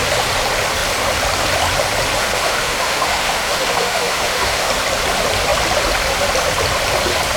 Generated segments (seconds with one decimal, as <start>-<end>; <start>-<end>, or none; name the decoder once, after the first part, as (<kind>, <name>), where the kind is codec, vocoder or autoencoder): 2.2-4.7 (autoencoder, DAC-VAE)